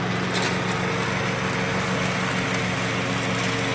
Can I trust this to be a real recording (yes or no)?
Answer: yes